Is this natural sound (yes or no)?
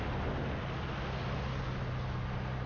yes